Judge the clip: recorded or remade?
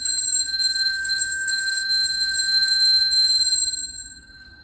remade